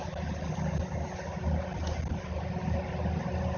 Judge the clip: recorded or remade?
recorded